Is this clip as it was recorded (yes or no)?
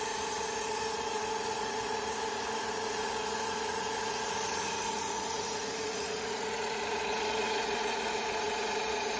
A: no